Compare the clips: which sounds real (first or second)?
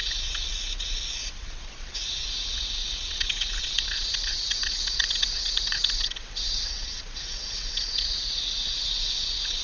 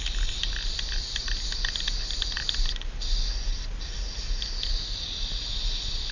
second